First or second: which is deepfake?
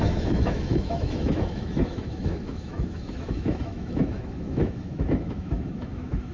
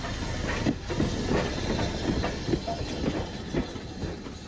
first